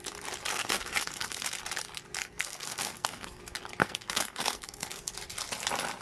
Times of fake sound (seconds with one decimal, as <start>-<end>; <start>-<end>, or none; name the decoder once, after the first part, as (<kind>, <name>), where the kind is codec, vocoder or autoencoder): 0.5-1.6 (codec, SNAC); 2.2-3.4; 3.8-5.1